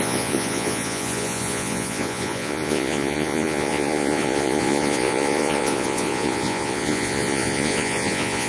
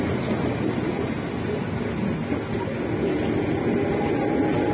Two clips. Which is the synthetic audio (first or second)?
first